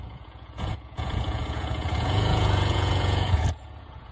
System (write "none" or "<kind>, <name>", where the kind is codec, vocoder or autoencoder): vocoder, Vocos